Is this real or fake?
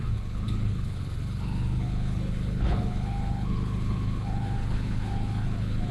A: fake